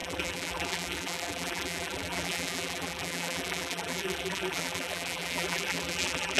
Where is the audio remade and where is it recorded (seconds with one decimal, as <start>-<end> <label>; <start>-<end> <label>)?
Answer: 0.0-6.4 remade